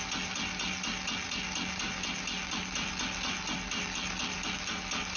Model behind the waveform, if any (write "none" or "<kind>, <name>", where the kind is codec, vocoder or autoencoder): none